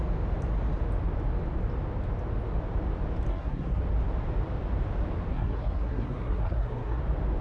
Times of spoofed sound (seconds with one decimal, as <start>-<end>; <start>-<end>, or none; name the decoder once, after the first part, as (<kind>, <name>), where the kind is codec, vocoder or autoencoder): 3.3-3.8 (codec, SNAC); 5.3-7.0